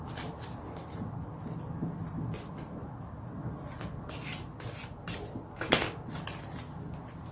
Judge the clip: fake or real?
real